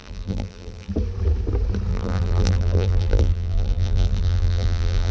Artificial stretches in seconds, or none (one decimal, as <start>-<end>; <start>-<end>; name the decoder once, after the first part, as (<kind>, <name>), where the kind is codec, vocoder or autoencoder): 0.0-0.9 (vocoder, BigVGAN v2); 1.9-5.1